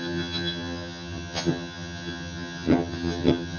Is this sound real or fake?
fake